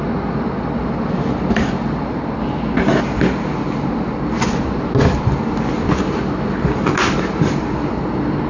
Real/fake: real